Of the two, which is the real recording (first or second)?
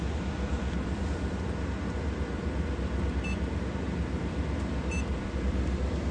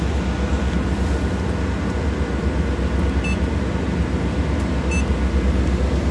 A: second